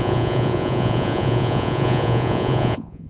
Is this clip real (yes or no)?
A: no